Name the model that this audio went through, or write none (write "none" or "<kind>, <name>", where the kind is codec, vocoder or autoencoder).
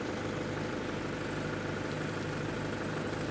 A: none